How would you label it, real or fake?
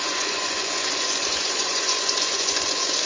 fake